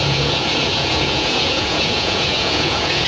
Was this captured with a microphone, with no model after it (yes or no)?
no